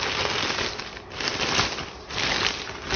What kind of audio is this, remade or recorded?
recorded